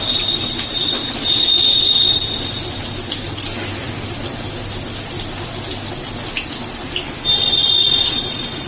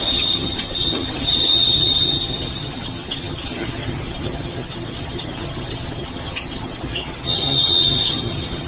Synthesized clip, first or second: second